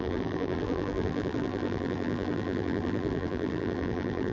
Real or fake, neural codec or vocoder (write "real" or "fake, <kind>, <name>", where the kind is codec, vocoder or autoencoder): fake, vocoder, BigVGAN v2